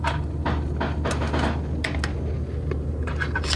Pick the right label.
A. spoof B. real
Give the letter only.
B